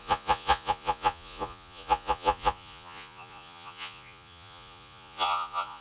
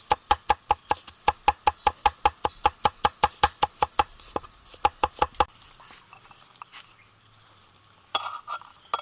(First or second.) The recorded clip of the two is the second